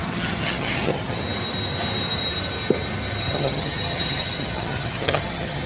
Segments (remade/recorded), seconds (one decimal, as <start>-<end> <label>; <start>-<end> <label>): 0.0-1.2 remade; 1.2-3.2 recorded; 3.2-5.7 remade